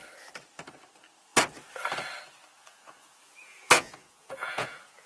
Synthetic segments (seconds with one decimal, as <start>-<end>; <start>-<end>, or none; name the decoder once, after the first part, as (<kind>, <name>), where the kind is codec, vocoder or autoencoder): 2.6-5.1 (vocoder, Vocos)

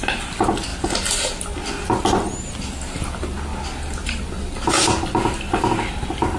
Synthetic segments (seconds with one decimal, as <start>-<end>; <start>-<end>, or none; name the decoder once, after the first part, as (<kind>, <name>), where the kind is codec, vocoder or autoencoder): none

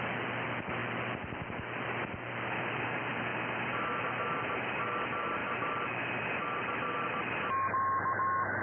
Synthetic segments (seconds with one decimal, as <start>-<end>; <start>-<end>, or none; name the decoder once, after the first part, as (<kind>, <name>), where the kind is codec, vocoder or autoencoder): none